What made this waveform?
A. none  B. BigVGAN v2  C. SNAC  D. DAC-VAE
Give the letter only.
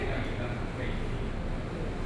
A